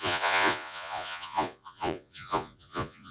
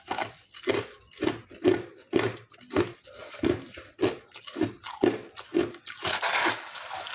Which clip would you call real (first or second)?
second